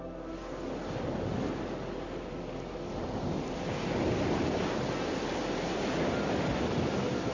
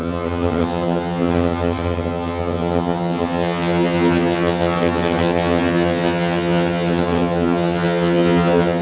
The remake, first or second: second